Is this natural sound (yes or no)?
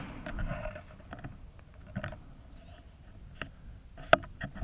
yes